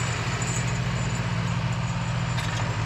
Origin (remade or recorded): recorded